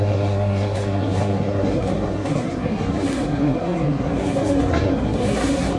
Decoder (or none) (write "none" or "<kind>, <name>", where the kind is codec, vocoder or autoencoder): codec, SNAC